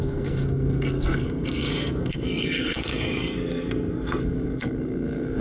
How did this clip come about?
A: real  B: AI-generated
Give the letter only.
B